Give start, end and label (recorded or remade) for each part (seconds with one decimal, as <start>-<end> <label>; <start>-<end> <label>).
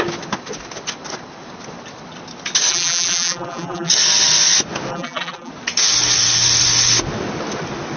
0.0-2.7 recorded; 2.7-3.9 remade; 3.9-4.9 recorded; 4.9-5.5 remade; 5.5-8.0 recorded